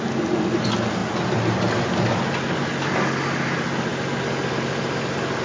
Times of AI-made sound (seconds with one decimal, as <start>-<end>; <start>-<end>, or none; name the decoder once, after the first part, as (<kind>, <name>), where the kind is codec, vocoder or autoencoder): none